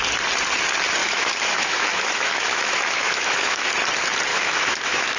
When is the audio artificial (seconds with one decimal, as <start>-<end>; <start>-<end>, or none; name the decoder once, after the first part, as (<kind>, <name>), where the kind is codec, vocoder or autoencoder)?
1.0-3.7 (autoencoder, DAC-VAE); 4.3-5.2